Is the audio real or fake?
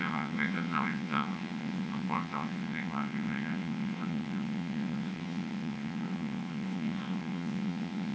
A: fake